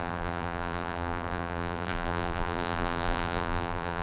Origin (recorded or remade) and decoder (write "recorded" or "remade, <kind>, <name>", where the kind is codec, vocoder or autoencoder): remade, vocoder, BigVGAN v2